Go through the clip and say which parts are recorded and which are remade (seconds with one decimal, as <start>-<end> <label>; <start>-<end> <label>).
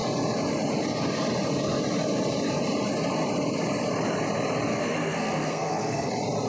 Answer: 0.0-4.7 recorded; 4.7-6.1 remade; 6.1-6.5 recorded